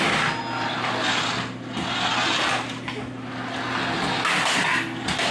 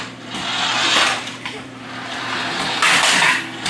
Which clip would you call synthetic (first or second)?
second